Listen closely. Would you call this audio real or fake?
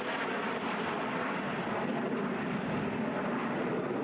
real